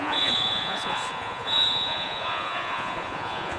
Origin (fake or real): fake